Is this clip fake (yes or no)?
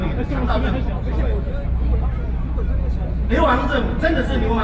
no